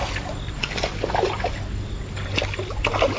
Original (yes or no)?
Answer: yes